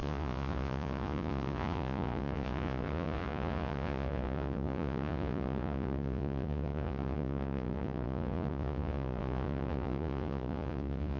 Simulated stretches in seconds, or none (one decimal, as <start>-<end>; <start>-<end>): 0.0-11.2